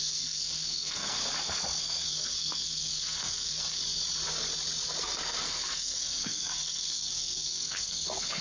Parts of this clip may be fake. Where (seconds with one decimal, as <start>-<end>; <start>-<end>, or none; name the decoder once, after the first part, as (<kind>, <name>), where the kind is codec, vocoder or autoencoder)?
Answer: 0.0-1.2 (codec, SNAC); 1.8-3.8; 5.0-8.4

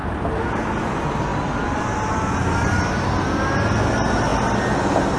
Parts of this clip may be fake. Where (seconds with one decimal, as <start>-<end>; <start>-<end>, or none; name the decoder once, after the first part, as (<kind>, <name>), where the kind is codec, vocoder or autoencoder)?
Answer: 0.0-0.6 (vocoder, BigVGAN v2)